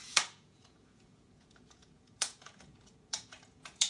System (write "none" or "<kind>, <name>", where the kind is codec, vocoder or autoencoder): vocoder, Vocos